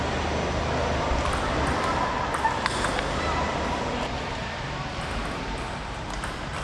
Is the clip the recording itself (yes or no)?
yes